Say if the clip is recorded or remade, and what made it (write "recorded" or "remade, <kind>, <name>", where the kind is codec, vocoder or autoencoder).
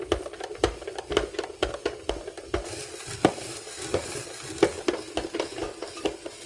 recorded